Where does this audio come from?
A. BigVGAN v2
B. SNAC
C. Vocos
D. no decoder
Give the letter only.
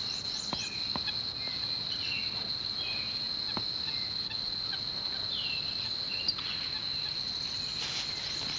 D